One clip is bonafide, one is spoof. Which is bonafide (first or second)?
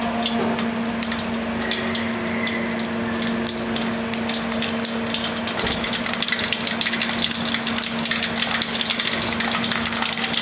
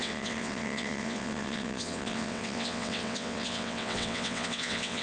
first